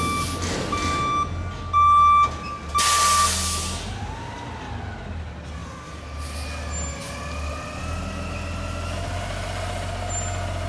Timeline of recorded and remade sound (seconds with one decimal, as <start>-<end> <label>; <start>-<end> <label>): 0.0-10.7 recorded